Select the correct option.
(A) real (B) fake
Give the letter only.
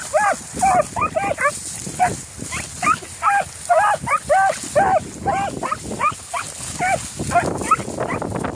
A